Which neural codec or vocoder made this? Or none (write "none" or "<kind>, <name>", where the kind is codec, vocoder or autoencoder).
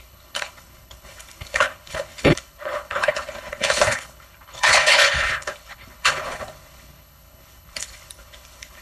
codec, HILCodec